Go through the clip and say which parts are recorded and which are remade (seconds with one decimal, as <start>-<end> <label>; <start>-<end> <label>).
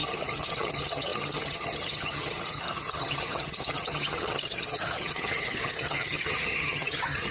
0.0-7.3 remade